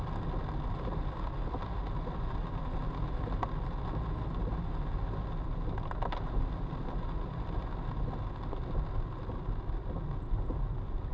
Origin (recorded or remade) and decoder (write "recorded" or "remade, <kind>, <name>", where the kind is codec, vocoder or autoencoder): recorded